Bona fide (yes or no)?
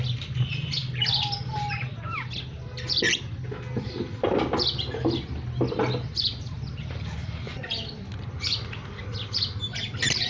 yes